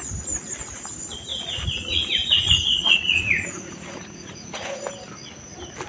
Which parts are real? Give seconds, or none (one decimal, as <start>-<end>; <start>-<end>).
0.0-1.3; 4.8-5.9